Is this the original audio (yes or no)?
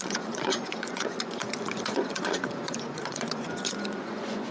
no